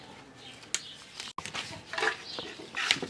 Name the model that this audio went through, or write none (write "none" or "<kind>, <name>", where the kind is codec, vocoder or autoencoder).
none